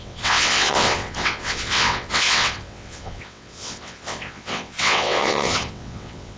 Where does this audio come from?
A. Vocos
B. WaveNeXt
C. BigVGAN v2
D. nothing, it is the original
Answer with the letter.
B